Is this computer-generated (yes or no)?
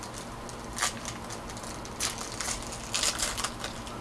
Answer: no